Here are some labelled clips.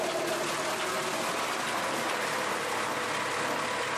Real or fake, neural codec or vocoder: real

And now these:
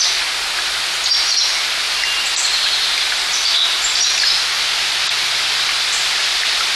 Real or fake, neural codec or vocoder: real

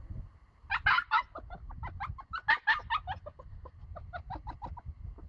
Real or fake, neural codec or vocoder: real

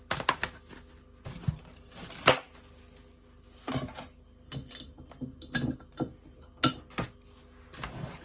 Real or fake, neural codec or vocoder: real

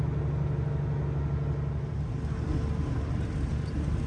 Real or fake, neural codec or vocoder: real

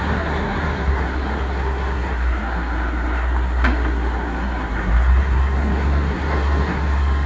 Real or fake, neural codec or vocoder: fake, codec, SNAC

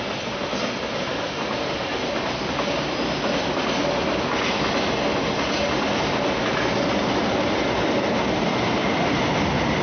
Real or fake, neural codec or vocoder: real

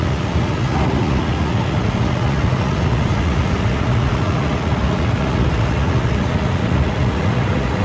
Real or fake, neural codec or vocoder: fake, vocoder, Vocos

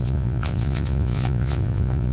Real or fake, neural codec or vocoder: fake, vocoder, Vocos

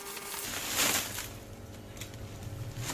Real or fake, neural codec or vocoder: real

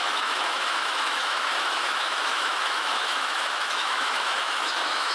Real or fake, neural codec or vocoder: fake, autoencoder, DAC-VAE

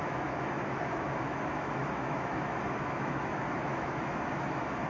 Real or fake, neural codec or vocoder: fake, autoencoder, DAC-VAE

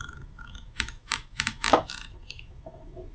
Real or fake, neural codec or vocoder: fake, autoencoder, DAC-VAE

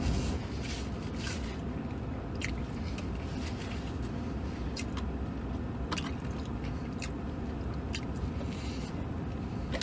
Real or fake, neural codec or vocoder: real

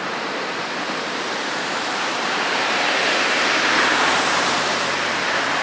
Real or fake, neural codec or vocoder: fake, vocoder, BigVGAN v2